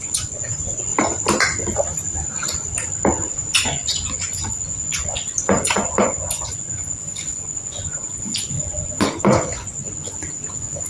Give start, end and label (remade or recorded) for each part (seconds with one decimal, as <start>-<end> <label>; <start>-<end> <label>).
0.0-0.9 remade; 0.9-3.3 recorded; 3.3-10.9 remade